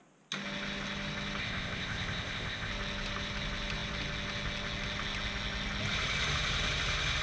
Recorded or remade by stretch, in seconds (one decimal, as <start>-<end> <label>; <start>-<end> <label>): 0.0-1.4 recorded; 1.4-2.7 remade; 2.7-7.2 recorded